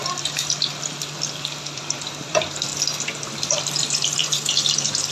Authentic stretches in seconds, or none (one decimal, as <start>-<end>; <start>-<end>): none